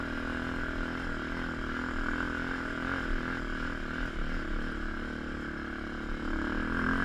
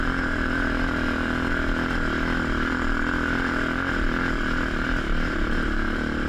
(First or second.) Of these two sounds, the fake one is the second